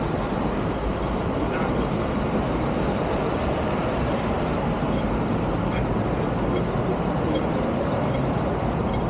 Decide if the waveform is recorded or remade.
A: remade